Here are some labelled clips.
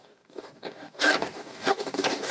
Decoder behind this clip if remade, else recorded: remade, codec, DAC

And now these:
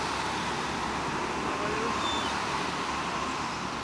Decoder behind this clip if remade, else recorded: recorded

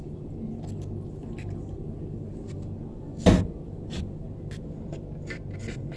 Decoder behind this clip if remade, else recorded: recorded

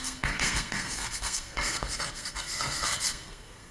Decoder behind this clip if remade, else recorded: remade, codec, SNAC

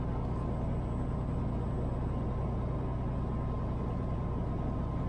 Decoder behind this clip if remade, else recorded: recorded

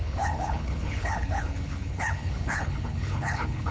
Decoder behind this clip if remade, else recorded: remade, codec, HILCodec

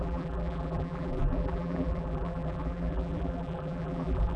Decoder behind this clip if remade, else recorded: remade, vocoder, BigVGAN v2